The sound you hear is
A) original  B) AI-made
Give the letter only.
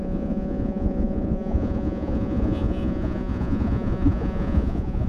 B